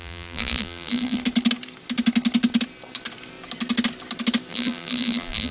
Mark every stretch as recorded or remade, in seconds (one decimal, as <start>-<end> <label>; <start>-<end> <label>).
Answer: 0.0-1.2 remade; 1.2-4.5 recorded; 4.5-5.5 remade